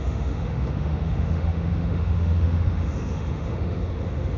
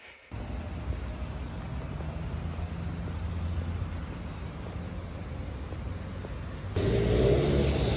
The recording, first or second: second